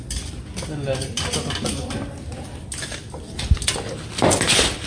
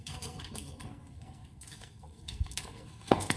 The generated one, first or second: second